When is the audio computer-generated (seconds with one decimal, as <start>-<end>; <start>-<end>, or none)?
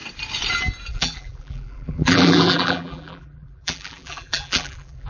0.9-5.1